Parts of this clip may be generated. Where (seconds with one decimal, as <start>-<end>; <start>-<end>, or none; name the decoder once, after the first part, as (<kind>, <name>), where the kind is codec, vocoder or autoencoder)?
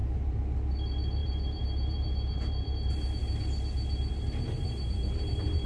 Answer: 0.0-0.7 (vocoder, BigVGAN v2); 1.2-2.7